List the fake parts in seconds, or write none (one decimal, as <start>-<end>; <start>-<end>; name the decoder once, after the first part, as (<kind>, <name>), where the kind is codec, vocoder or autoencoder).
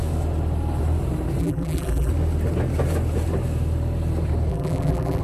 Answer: 1.4-2.1 (vocoder, BigVGAN v2); 4.5-5.2